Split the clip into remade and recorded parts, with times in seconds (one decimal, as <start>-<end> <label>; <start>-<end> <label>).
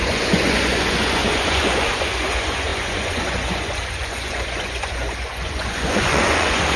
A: 0.0-6.8 remade